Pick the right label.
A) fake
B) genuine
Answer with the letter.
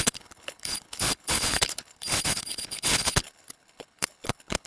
A